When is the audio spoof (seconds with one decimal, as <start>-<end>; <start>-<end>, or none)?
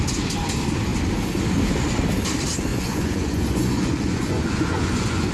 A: 2.7-5.3